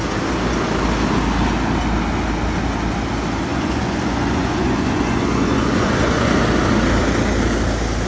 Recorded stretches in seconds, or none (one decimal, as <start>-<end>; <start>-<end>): 0.0-3.5; 6.3-8.1